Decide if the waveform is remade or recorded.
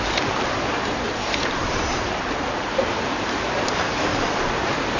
remade